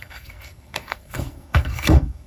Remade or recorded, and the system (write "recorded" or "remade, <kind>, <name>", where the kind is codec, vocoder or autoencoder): remade, codec, SNAC